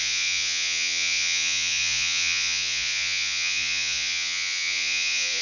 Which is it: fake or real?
fake